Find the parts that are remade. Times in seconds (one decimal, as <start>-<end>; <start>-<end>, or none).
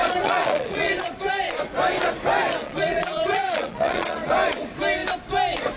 0.0-0.9; 2.6-4.3